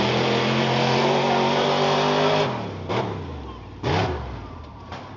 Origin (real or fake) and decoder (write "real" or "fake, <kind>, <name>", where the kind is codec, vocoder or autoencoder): real